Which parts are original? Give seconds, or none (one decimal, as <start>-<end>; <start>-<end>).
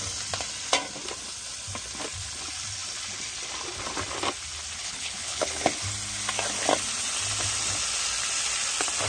0.0-4.8; 5.7-9.1